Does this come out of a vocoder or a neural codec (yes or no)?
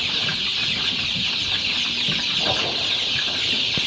no